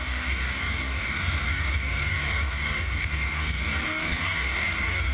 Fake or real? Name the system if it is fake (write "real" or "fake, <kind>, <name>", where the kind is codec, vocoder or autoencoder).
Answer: fake, codec, DAC